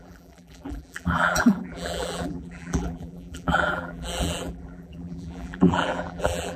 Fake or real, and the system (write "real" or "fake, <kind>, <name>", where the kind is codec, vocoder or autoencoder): fake, vocoder, BigVGAN v2